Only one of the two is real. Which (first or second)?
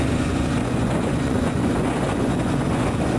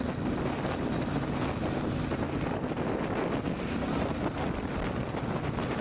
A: second